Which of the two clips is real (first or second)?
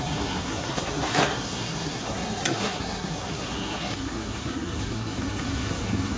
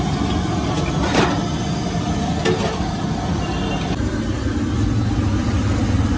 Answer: second